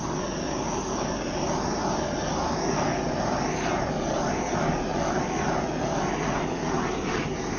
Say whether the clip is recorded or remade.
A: recorded